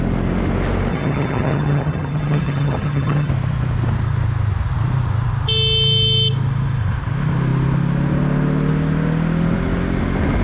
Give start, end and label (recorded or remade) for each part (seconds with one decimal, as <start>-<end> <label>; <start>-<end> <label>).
0.0-0.9 recorded; 0.9-3.3 remade; 3.3-10.4 recorded